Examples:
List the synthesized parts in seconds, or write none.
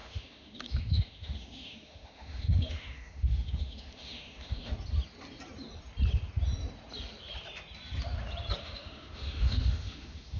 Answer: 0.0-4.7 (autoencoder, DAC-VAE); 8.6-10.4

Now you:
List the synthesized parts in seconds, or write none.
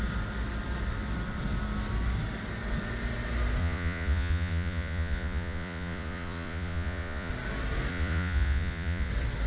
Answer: 3.6-7.3 (vocoder, Vocos); 7.9-9.1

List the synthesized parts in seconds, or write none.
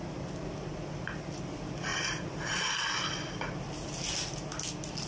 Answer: none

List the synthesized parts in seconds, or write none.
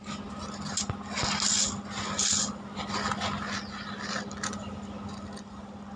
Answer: none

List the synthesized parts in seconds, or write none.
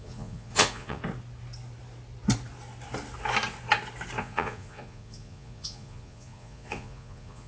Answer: 0.0-1.0 (vocoder, Vocos); 4.2-7.5